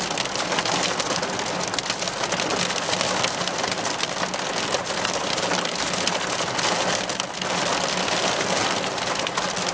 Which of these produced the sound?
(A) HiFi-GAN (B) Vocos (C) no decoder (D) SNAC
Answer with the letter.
C